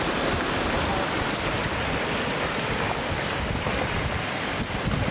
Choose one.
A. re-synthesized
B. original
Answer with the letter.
B